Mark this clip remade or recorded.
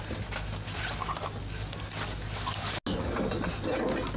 recorded